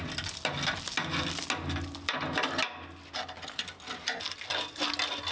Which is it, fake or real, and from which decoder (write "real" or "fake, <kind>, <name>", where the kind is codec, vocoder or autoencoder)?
real